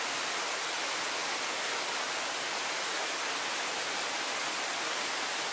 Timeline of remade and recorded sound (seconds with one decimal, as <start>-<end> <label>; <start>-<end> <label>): 0.0-5.5 recorded